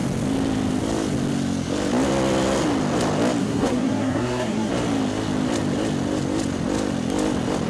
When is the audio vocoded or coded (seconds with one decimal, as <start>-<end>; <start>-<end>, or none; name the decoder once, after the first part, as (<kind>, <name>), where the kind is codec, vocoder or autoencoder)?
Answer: 3.4-4.7 (codec, SNAC)